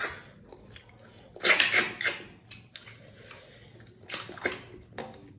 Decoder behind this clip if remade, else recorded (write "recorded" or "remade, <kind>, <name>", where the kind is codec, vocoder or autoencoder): recorded